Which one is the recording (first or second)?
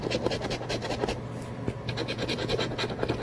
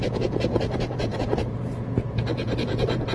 first